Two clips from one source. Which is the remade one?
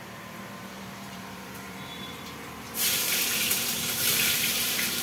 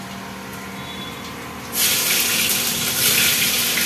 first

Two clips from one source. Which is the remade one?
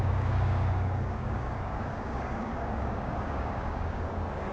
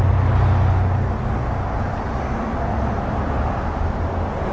first